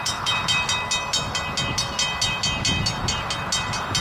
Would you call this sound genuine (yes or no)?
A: yes